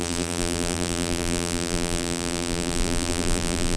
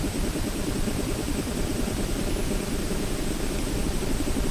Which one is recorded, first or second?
second